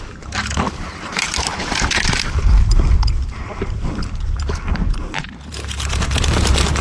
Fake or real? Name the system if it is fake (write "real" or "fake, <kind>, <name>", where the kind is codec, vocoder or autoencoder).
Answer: fake, vocoder, BigVGAN v2